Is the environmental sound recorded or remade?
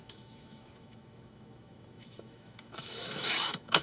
remade